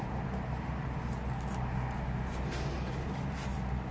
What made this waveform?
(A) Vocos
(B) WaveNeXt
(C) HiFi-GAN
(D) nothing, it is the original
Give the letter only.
D